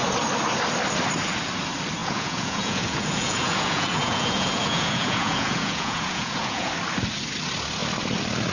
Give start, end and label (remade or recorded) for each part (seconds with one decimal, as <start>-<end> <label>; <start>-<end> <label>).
0.0-2.0 recorded; 2.0-6.7 remade; 6.7-8.5 recorded